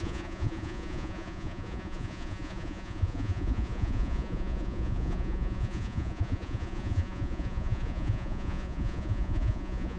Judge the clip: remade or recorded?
remade